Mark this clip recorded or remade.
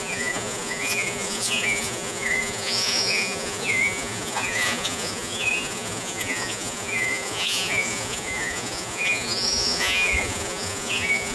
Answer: remade